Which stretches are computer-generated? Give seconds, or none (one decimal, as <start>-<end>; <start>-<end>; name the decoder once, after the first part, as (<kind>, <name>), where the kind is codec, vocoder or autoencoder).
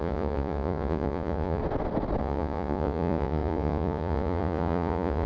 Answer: 0.0-1.6 (vocoder, Vocos); 2.2-5.3